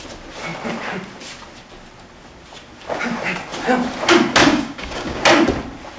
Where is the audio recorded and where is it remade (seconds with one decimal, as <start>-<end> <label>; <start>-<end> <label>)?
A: 0.0-4.5 recorded; 4.5-5.2 remade; 5.2-6.0 recorded